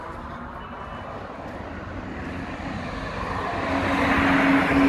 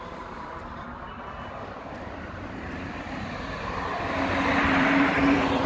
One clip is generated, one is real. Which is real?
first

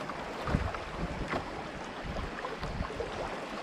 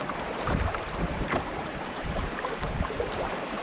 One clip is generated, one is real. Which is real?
first